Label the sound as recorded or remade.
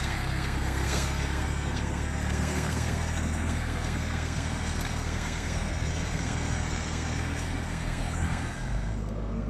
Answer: remade